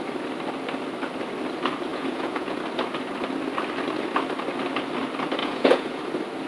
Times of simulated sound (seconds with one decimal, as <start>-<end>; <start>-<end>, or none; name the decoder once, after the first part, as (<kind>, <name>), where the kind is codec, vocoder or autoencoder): 1.9-2.6 (vocoder, Vocos); 5.4-6.0